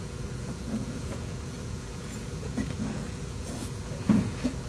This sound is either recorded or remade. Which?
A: remade